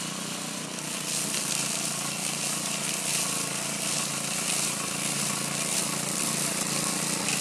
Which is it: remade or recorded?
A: recorded